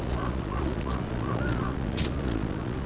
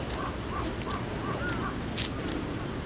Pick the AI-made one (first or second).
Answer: first